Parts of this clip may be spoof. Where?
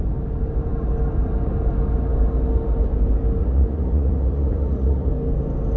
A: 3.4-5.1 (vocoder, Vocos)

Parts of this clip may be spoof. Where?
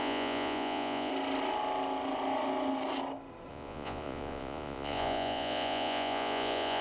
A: 0.0-1.1 (vocoder, Vocos); 3.5-6.8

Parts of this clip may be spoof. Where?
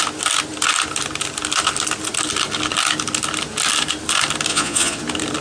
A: 4.5-5.0 (vocoder, Vocos)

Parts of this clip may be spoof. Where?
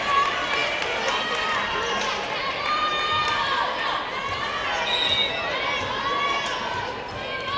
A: 0.6-2.9 (vocoder, BigVGAN v2)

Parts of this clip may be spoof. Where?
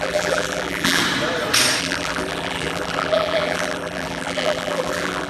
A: 0.0-1.0 (vocoder, BigVGAN v2); 1.8-5.3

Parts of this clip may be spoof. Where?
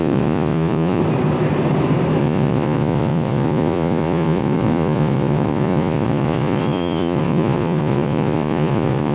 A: 0.0-1.0 (vocoder, Vocos); 2.2-9.1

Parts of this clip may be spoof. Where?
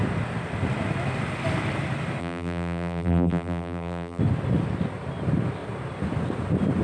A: 2.2-4.2 (vocoder, BigVGAN v2)